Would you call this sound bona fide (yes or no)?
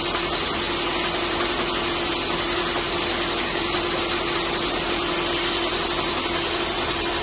yes